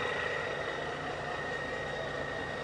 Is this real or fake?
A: fake